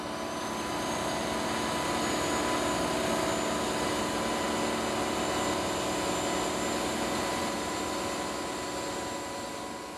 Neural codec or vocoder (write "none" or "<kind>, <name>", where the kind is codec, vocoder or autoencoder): none